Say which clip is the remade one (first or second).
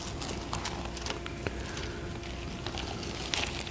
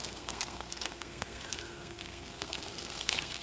second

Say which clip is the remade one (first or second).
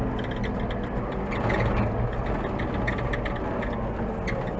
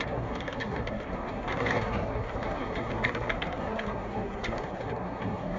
second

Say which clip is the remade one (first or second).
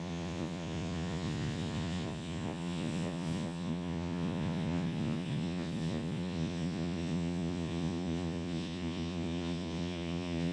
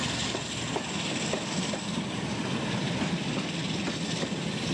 first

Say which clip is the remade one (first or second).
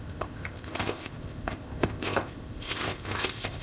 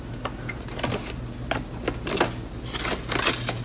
first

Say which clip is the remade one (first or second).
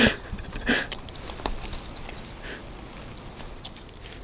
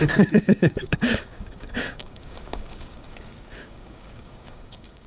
second